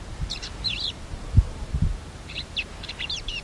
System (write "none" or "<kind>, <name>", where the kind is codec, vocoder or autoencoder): vocoder, BigVGAN v2